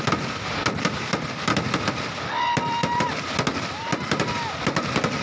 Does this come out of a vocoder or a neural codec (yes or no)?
no